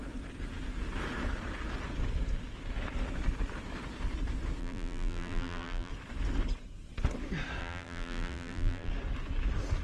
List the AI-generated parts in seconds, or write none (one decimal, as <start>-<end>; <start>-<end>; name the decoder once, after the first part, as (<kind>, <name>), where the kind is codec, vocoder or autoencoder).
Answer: 4.6-5.9 (vocoder, BigVGAN v2); 7.6-8.9